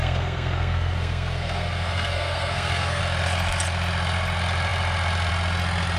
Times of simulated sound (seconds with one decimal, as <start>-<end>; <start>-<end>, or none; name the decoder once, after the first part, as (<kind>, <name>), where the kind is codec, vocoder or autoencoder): 0.0-3.0 (codec, SNAC)